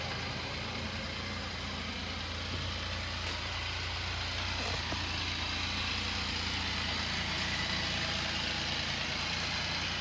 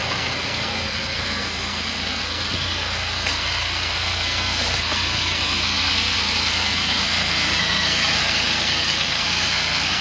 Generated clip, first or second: second